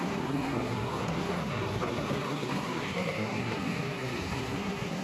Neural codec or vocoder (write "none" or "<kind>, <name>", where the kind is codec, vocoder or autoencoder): codec, SNAC